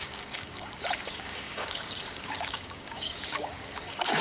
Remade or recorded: remade